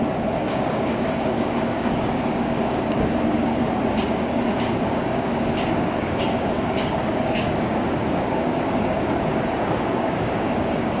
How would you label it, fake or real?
fake